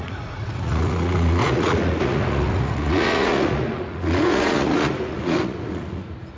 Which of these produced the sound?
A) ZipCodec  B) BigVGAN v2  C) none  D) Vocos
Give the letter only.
D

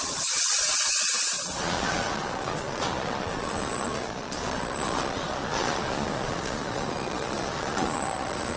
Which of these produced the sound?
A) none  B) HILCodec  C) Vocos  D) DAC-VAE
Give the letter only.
C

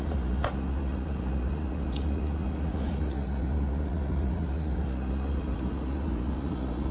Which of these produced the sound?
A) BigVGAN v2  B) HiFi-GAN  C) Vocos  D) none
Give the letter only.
C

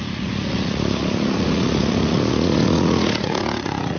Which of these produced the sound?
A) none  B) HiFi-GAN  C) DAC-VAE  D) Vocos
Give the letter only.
D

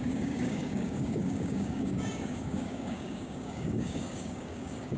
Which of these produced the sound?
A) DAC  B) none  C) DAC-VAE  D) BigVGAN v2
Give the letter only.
A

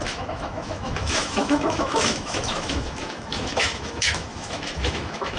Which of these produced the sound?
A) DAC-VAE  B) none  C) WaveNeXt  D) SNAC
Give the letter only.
A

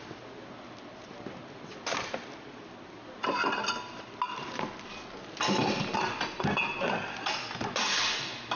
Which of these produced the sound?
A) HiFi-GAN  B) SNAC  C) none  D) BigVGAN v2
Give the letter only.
C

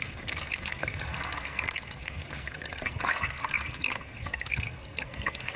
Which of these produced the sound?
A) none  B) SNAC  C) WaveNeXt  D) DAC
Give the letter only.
B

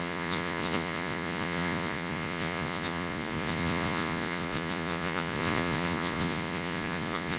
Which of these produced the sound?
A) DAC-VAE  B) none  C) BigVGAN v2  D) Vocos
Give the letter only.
D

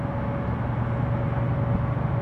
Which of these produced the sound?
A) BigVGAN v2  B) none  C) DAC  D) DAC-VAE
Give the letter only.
B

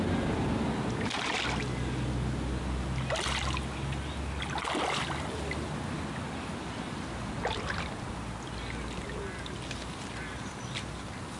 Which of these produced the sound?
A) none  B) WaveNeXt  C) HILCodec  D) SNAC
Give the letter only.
A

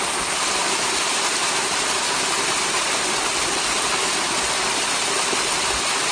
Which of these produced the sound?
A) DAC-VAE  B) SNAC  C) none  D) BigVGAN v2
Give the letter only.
C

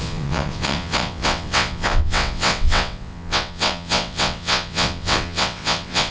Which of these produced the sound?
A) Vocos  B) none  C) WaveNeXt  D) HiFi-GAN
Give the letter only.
C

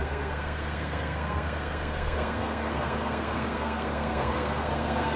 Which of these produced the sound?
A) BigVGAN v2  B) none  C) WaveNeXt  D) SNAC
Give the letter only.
D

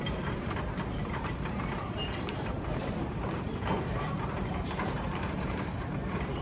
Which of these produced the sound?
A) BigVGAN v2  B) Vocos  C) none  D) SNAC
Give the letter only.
A